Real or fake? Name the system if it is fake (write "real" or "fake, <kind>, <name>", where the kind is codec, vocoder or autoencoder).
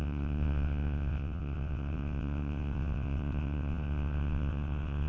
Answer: fake, vocoder, WaveNeXt